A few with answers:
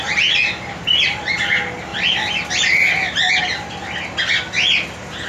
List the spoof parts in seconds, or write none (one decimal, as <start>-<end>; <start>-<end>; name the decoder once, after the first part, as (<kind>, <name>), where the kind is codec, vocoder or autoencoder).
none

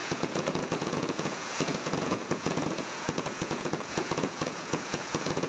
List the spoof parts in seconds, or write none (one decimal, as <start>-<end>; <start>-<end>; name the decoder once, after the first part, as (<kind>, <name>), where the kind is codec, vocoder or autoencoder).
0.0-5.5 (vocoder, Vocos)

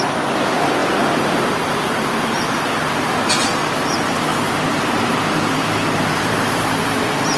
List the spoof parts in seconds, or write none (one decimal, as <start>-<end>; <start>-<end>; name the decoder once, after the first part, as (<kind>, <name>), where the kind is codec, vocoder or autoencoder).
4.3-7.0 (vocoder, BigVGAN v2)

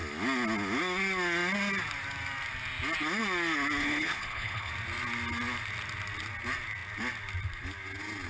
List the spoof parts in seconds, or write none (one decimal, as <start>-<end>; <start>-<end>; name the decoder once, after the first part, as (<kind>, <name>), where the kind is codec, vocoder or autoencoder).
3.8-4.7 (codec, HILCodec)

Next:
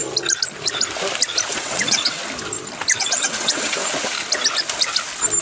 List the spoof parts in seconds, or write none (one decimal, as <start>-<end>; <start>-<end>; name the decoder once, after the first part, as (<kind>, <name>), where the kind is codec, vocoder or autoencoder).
1.5-2.2 (vocoder, WaveNeXt); 3.0-3.8

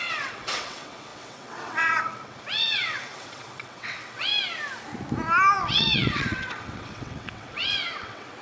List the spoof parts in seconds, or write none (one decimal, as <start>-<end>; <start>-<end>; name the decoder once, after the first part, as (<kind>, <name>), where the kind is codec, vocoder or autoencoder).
0.0-4.3 (vocoder, WaveNeXt); 5.6-8.4